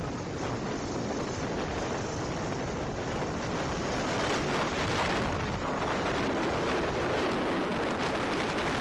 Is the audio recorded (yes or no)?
yes